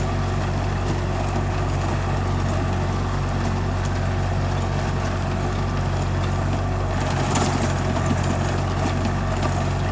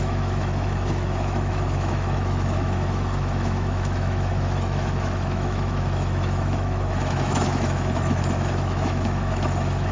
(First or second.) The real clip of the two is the first